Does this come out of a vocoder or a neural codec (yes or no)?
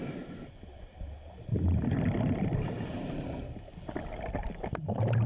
no